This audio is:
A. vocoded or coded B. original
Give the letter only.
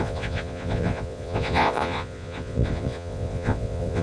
A